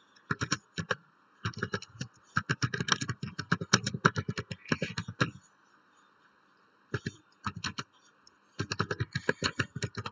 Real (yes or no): yes